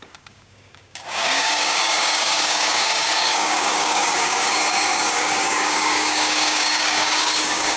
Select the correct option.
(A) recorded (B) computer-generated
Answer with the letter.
B